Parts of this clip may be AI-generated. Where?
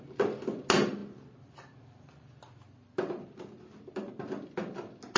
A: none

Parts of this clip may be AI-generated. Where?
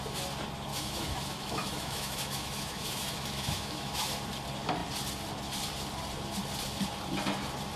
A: 0.7-4.0 (autoencoder, DAC-VAE)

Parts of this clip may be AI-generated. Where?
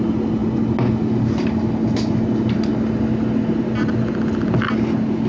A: none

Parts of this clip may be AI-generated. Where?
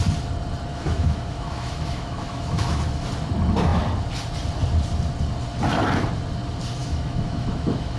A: 0.7-2.8 (autoencoder, DAC-VAE); 6.8-8.0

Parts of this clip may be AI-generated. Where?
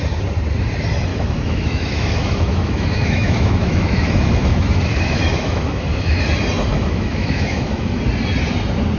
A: 1.1-6.2 (autoencoder, DAC-VAE); 6.7-8.0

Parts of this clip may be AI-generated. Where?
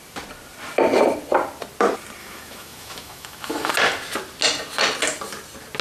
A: 2.2-3.7 (autoencoder, DAC-VAE)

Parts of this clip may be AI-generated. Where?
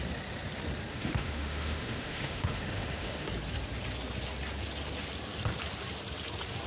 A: 0.9-3.3 (autoencoder, DAC-VAE)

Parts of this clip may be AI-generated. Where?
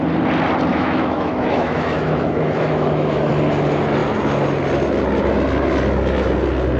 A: 0.7-3.3 (autoencoder, DAC-VAE)